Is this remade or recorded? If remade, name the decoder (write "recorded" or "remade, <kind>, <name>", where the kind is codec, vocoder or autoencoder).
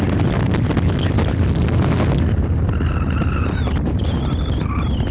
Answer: recorded